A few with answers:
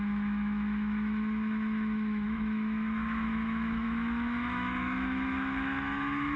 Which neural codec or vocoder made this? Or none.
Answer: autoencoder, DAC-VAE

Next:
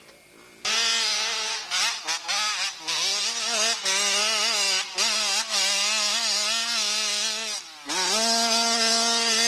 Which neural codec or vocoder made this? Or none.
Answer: none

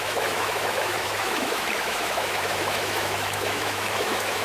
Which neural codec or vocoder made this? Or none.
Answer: autoencoder, DAC-VAE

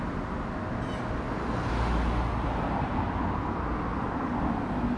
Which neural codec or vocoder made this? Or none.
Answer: none